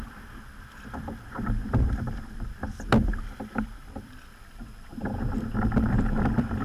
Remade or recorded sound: remade